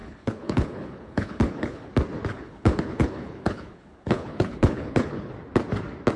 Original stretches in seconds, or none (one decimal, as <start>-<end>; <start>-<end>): 1.9-2.3; 5.3-6.2